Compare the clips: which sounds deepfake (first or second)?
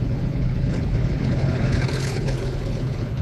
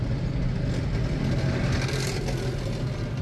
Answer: first